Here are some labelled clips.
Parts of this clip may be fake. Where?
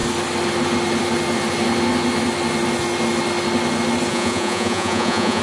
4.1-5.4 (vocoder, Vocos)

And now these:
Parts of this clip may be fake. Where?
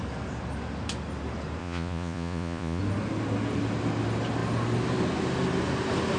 1.6-2.8 (vocoder, Vocos)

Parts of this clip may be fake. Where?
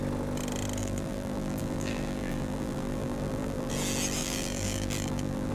0.8-3.7 (vocoder, BigVGAN v2); 4.2-5.5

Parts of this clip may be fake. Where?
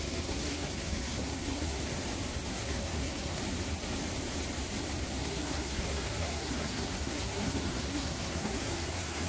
0.0-1.8 (codec, SNAC); 2.5-3.4; 5.2-9.3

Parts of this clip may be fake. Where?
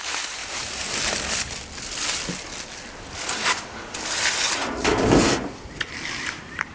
0.4-1.1 (vocoder, BigVGAN v2)